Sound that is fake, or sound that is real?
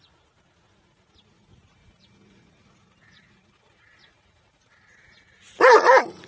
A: fake